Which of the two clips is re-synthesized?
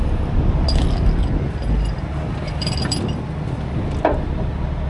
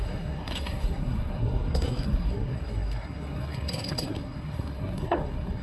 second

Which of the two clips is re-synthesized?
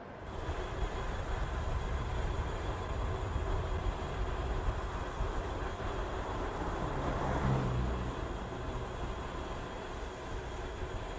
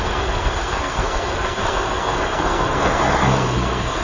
second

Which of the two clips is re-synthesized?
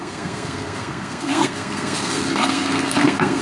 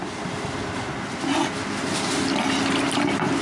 first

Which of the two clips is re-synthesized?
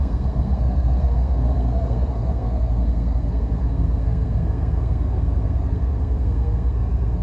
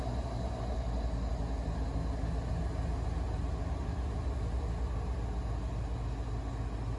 first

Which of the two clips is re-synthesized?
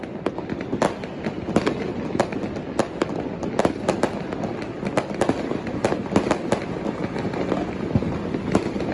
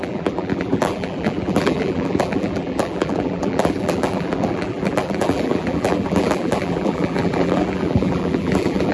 second